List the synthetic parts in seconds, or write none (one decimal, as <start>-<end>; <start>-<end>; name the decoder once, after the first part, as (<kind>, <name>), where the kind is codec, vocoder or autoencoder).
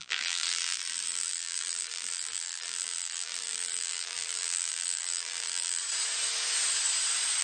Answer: 0.0-5.8 (vocoder, BigVGAN v2)